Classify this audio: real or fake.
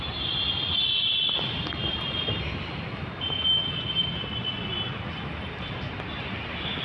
real